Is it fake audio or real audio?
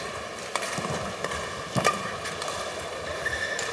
real